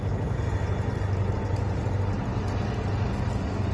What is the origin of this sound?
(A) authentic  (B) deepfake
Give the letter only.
A